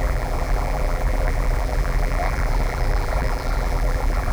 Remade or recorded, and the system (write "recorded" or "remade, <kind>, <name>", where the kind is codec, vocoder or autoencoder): remade, vocoder, BigVGAN v2